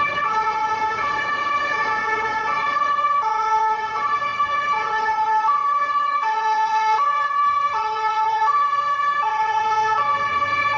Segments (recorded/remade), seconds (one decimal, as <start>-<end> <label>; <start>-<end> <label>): 0.0-10.8 remade